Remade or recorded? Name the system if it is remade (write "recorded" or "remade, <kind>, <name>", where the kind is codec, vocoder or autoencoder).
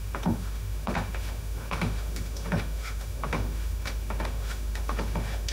remade, autoencoder, DAC-VAE